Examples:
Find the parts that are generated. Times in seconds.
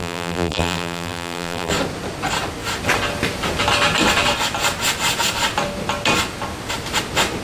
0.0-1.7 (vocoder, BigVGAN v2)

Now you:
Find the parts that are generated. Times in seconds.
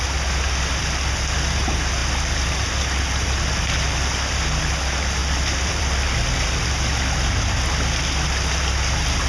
5.2-6.6 (vocoder, BigVGAN v2)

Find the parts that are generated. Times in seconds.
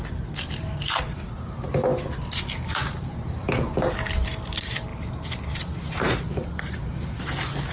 2.8-3.7 (vocoder, BigVGAN v2); 4.9-7.2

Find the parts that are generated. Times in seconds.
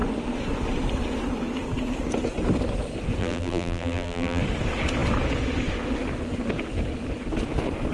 3.2-4.4 (vocoder, BigVGAN v2)